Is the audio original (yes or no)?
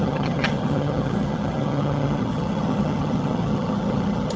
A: no